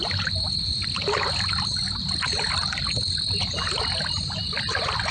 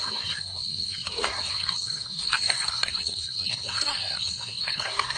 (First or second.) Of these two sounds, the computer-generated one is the second